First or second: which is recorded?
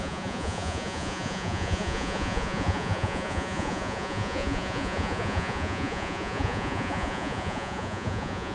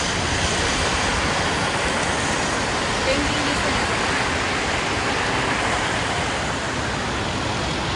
second